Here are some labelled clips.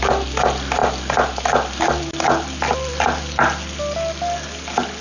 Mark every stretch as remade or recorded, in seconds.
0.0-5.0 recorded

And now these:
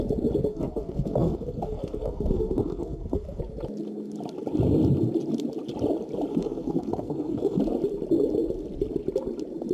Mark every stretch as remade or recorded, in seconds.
0.0-0.5 recorded; 0.5-3.4 remade; 3.4-6.3 recorded; 6.3-7.6 remade; 7.6-9.7 recorded

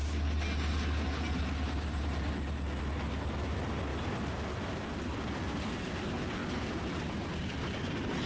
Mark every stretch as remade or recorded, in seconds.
0.0-3.9 recorded; 3.9-5.2 remade; 5.2-8.3 recorded

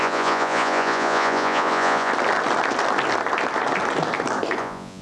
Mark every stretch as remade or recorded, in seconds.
0.0-2.1 remade; 2.1-4.6 recorded; 4.6-5.0 remade